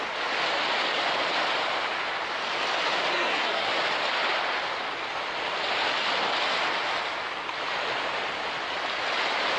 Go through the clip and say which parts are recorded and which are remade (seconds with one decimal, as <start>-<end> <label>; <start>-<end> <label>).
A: 0.0-3.1 recorded; 3.1-3.7 remade; 3.7-9.6 recorded